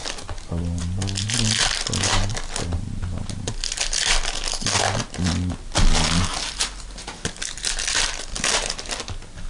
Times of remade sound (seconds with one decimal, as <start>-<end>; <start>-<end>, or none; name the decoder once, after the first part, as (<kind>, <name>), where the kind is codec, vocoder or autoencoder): 8.3-9.0 (vocoder, BigVGAN v2)